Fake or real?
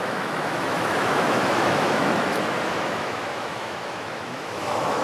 fake